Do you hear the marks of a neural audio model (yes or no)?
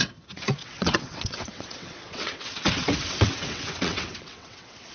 yes